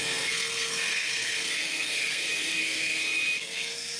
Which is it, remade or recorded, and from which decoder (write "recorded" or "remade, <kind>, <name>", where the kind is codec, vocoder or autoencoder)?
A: remade, codec, SNAC